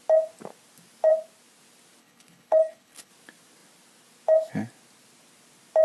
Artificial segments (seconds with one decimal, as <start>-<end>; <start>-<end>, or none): 2.0-3.1